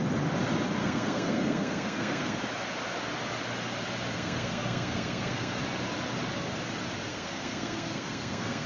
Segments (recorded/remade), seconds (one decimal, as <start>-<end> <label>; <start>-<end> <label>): 0.0-0.8 recorded; 0.8-2.4 remade; 2.4-4.1 recorded; 4.1-5.6 remade; 5.6-7.1 recorded; 7.1-8.7 remade